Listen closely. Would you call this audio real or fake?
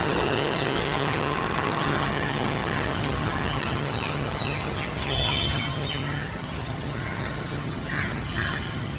fake